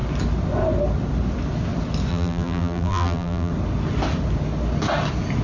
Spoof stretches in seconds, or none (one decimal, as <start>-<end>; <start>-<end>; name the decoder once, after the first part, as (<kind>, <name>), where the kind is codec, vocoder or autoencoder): 2.1-3.5 (vocoder, BigVGAN v2)